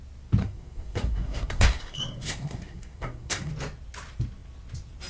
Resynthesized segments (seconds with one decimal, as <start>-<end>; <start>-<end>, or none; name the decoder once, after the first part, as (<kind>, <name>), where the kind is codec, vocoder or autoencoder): 0.4-3.5 (codec, SNAC)